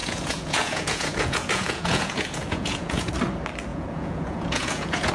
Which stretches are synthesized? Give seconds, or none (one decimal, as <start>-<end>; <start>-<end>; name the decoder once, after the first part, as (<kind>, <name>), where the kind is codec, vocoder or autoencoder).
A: 0.0-3.1 (vocoder, Vocos); 3.7-5.1